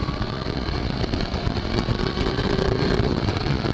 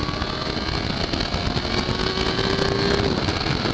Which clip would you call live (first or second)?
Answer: second